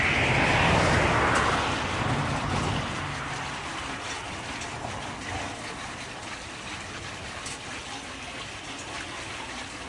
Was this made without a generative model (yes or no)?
yes